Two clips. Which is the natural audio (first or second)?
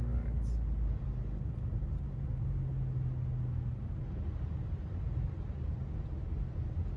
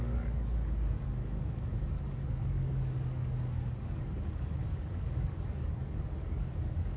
first